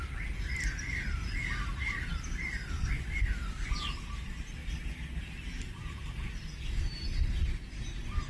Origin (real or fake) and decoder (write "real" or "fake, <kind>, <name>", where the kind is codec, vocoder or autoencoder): fake, vocoder, BigVGAN v2